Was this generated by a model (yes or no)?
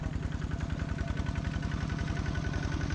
no